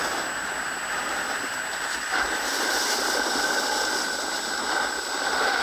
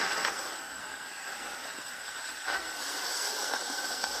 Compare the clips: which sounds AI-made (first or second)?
second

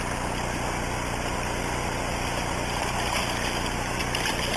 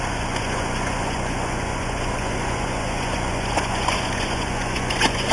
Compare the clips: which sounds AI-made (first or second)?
second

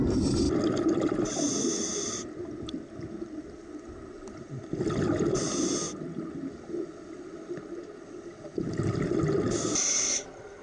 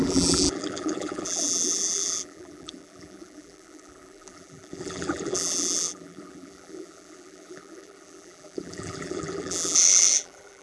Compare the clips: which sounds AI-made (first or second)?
second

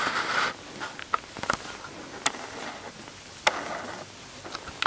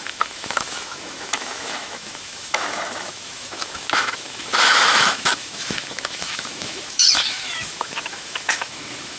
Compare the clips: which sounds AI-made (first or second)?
second